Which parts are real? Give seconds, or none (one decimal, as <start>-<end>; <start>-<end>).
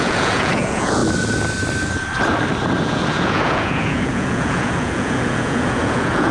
1.0-2.8